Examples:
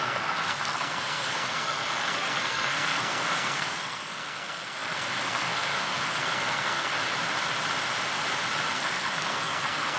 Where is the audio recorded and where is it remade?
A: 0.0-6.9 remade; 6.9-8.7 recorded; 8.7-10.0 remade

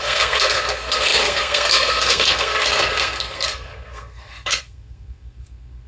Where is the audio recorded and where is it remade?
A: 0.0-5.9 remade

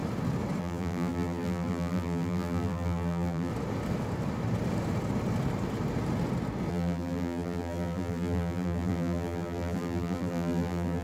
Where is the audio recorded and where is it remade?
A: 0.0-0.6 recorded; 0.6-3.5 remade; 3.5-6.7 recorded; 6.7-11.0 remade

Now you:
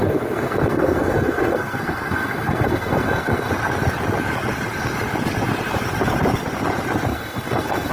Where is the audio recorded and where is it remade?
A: 0.0-3.5 remade; 3.5-7.1 recorded; 7.1-7.9 remade